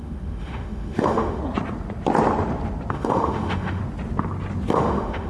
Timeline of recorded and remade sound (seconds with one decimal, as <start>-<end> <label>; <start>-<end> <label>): 0.0-1.4 remade; 1.4-2.9 recorded; 2.9-3.8 remade; 3.8-4.7 recorded; 4.7-5.3 remade

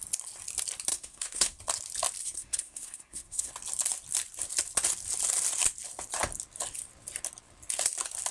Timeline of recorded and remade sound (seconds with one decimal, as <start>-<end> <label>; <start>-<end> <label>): 0.0-0.9 recorded; 0.9-1.6 remade; 1.6-2.2 recorded; 2.2-3.5 remade; 3.5-8.3 recorded

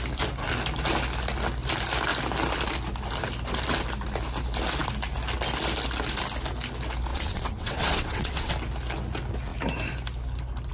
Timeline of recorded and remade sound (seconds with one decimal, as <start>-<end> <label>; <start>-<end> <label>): 0.0-7.1 recorded; 7.1-8.5 remade; 8.5-10.7 recorded